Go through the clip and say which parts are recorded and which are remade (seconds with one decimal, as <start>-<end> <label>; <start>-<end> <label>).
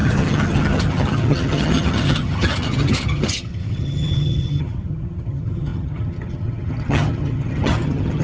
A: 0.0-8.2 remade